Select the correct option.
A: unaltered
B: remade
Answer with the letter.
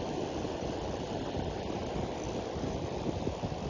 A